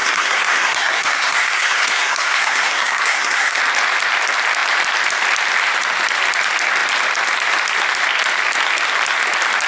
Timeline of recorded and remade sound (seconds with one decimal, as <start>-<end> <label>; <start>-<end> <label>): 0.0-3.6 remade; 3.6-9.7 recorded